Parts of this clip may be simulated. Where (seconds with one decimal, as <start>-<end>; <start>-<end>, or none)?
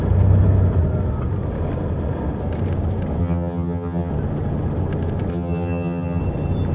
3.2-4.1; 5.3-6.2